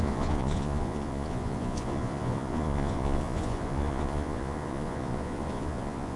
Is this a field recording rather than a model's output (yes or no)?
no